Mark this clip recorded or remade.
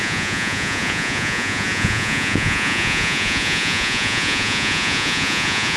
remade